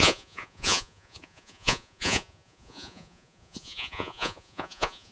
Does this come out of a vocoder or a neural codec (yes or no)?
yes